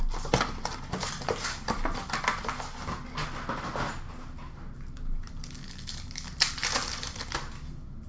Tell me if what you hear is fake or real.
real